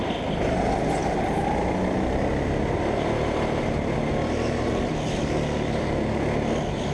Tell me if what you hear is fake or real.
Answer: real